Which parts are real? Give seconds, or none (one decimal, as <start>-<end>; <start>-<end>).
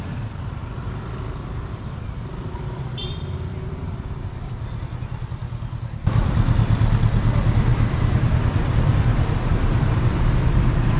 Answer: 5.4-6.2